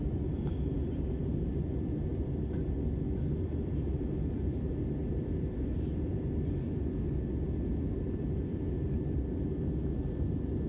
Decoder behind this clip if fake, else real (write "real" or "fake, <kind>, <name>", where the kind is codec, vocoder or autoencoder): real